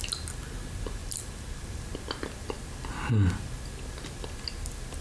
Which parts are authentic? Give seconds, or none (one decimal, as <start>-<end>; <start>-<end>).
0.0-1.0; 1.8-5.0